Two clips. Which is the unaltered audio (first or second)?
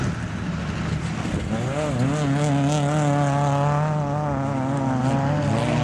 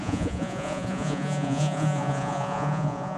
first